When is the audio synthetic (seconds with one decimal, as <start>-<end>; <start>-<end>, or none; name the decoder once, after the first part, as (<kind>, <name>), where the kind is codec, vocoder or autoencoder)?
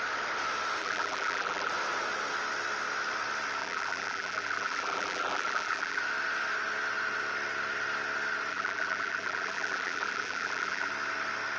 0.8-1.7 (vocoder, BigVGAN v2); 3.6-6.0; 8.5-10.9